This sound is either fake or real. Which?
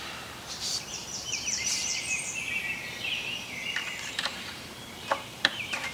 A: fake